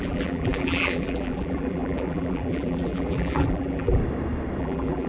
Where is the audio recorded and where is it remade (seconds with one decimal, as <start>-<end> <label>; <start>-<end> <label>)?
0.0-4.0 remade; 4.0-4.6 recorded; 4.6-5.1 remade